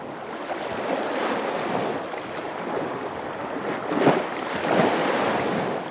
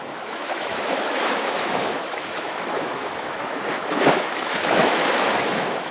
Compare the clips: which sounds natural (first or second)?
first